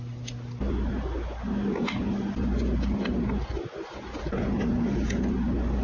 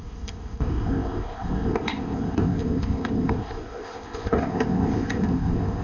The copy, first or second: second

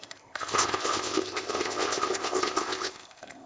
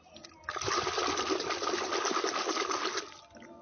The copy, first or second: first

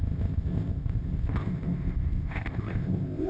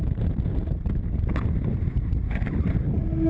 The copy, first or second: first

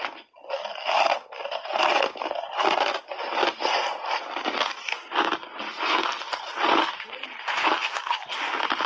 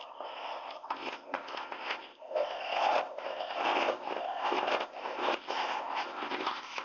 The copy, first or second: second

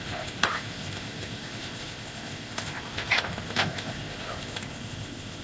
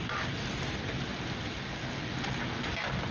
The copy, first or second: first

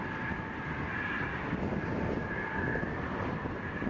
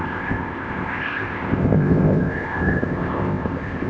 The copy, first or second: second